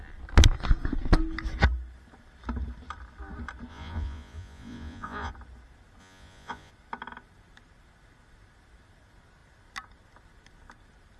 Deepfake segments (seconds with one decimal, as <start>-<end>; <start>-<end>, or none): 3.7-5.3; 6.0-6.7